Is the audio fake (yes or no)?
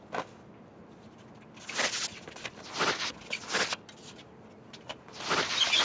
no